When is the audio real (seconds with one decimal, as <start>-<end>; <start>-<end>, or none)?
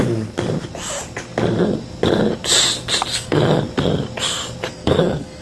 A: 0.0-3.1; 3.6-4.7